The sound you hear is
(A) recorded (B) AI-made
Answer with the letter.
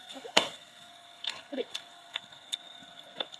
B